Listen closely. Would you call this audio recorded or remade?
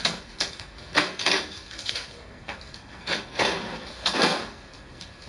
remade